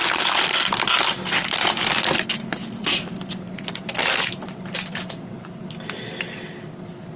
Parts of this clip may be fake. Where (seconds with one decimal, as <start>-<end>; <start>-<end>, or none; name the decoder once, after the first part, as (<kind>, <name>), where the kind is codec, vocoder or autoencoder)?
0.0-0.8 (vocoder, BigVGAN v2); 2.6-5.8